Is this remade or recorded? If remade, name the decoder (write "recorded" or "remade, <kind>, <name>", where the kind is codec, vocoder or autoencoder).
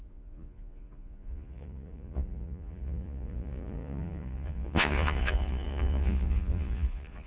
remade, vocoder, Vocos